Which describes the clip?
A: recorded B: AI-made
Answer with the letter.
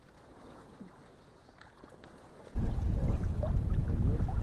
B